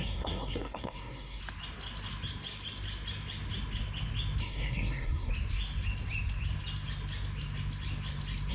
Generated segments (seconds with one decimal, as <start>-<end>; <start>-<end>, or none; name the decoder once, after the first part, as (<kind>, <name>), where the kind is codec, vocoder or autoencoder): 0.0-1.4 (codec, SNAC); 4.4-5.3